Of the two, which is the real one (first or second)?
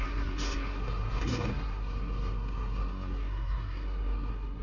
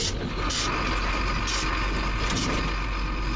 second